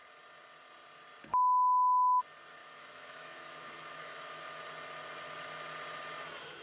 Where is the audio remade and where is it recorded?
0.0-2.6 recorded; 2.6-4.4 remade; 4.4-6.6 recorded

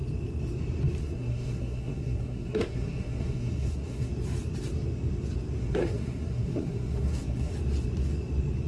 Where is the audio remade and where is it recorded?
0.0-1.0 recorded; 1.0-4.1 remade; 4.1-5.6 recorded; 5.6-7.5 remade; 7.5-8.7 recorded

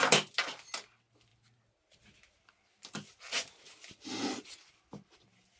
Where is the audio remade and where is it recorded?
0.0-5.6 recorded

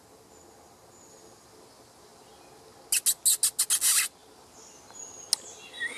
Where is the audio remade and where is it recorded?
0.0-6.0 recorded

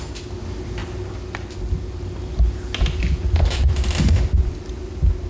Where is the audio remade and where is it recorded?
0.0-5.3 recorded

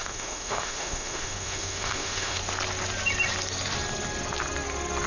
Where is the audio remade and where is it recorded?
0.0-2.4 remade; 2.4-5.1 recorded

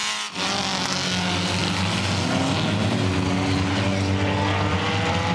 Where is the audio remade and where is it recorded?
0.0-5.3 recorded